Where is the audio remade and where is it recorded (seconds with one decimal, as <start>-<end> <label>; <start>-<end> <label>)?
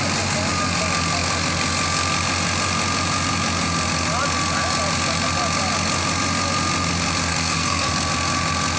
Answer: 0.0-7.3 recorded; 7.3-7.9 remade; 7.9-8.8 recorded